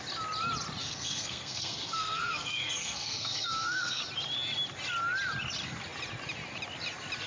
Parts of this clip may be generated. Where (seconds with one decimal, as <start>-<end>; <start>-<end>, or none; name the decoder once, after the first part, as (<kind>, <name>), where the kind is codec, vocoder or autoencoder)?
0.8-4.0 (codec, SNAC)